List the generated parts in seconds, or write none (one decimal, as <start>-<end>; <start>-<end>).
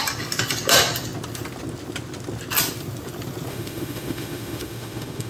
3.5-5.3